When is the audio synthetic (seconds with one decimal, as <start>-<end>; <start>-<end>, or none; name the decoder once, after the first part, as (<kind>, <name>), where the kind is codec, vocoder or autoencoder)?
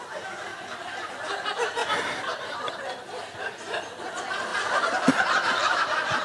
0.5-1.2 (vocoder, BigVGAN v2); 1.8-2.6; 4.5-5.1; 5.6-6.2